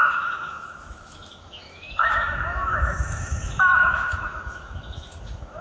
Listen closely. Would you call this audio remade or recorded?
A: remade